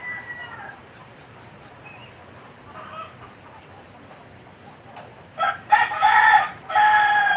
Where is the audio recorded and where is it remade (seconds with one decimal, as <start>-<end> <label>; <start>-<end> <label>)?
0.0-2.0 remade; 2.0-5.5 recorded; 5.5-7.4 remade